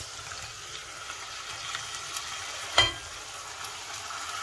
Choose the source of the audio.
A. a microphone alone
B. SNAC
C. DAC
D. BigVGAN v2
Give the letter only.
A